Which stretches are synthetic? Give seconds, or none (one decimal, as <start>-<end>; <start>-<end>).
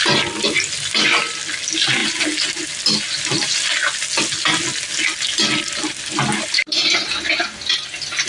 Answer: none